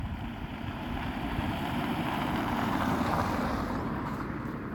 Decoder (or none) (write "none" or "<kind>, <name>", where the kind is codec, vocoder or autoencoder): vocoder, BigVGAN v2